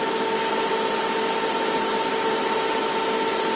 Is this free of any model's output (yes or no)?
yes